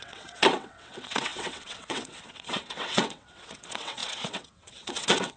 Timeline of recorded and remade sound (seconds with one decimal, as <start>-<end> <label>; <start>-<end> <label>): 0.0-5.4 remade